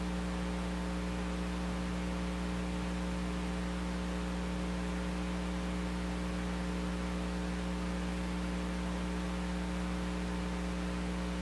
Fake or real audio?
real